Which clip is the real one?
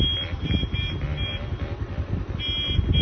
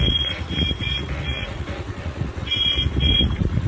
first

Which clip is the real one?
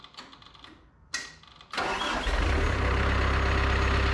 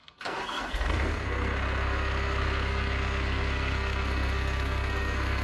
first